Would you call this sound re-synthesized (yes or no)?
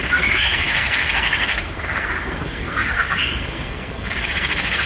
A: yes